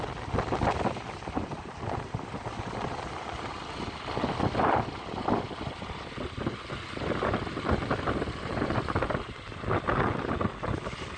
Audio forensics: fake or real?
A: real